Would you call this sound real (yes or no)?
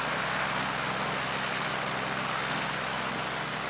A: yes